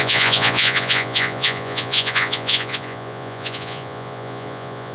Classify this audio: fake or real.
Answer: fake